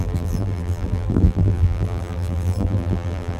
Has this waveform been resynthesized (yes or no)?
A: yes